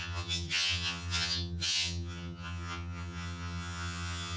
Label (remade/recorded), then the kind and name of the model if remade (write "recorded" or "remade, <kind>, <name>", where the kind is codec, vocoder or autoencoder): remade, vocoder, HiFi-GAN